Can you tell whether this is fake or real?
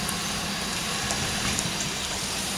real